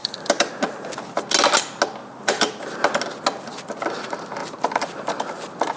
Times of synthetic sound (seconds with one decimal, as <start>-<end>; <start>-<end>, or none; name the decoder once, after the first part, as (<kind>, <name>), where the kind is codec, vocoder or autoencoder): 0.0-0.5 (vocoder, BigVGAN v2); 2.0-2.8; 4.4-5.8